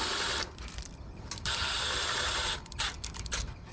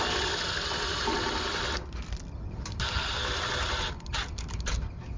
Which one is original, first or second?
second